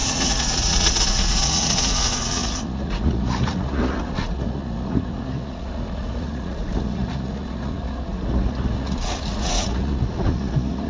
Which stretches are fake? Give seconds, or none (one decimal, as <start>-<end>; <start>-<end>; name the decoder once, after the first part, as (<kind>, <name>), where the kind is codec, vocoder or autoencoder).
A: 0.0-10.9 (vocoder, Vocos)